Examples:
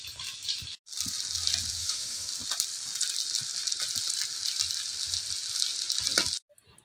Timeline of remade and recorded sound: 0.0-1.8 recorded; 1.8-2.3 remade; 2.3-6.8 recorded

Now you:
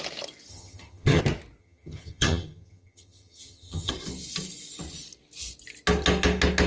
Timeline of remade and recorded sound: 0.0-0.5 recorded; 0.5-1.2 remade; 1.2-1.6 recorded; 1.6-3.9 remade; 3.9-6.7 recorded

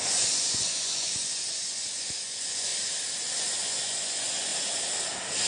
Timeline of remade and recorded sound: 0.0-2.7 remade; 2.7-3.4 recorded; 3.4-4.5 remade; 4.5-5.5 recorded

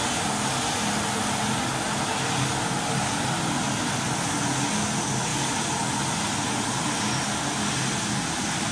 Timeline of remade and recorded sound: 0.0-8.7 recorded

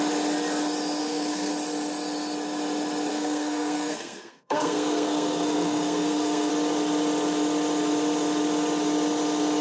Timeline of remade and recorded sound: 0.0-1.0 recorded; 1.0-1.5 remade; 1.5-3.1 recorded; 3.1-6.5 remade; 6.5-9.6 recorded

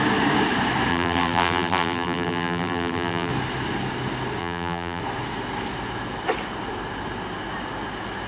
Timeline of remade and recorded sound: 0.0-0.9 recorded; 0.9-3.3 remade; 3.3-4.4 recorded; 4.4-5.0 remade; 5.0-8.3 recorded

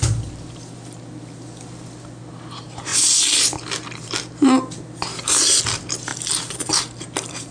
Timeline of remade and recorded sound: 0.0-6.1 recorded; 6.1-7.5 remade